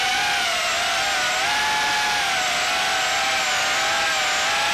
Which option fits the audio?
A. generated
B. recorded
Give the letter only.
B